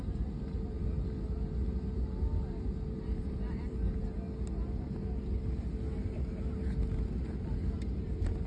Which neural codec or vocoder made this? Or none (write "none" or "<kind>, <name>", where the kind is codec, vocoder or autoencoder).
none